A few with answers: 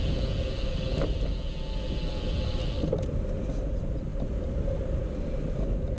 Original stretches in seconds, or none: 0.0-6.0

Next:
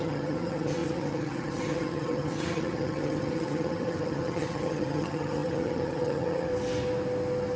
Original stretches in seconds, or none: 6.5-7.6

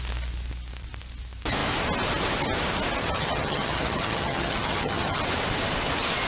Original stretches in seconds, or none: 0.0-3.0; 5.2-6.3

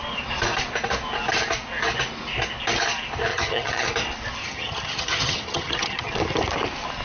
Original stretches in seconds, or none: 0.0-3.3; 3.9-4.4; 6.1-7.0

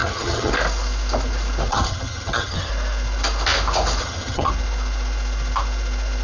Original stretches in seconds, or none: 0.5-1.7; 2.7-4.0; 4.5-6.2